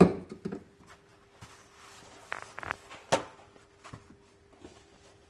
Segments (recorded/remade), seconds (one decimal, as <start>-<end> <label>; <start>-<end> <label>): 0.0-5.3 recorded